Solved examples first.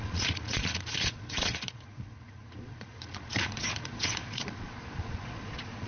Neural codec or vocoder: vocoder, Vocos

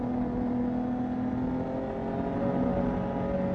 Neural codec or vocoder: none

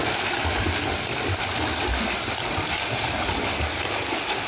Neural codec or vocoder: none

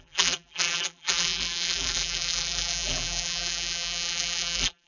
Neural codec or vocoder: vocoder, BigVGAN v2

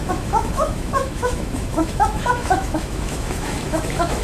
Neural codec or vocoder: autoencoder, DAC-VAE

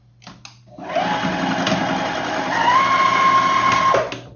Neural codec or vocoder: none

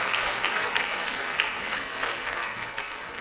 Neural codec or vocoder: codec, SNAC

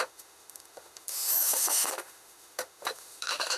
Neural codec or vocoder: autoencoder, DAC-VAE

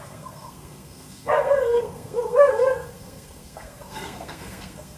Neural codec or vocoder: codec, SNAC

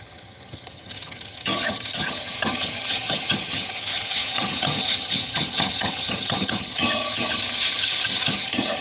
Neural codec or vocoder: vocoder, HiFi-GAN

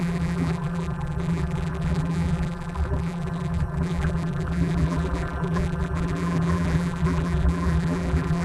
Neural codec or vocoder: vocoder, BigVGAN v2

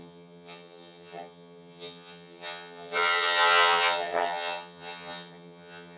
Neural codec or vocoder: vocoder, HiFi-GAN